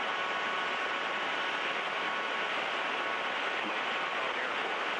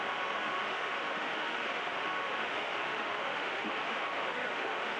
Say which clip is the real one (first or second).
first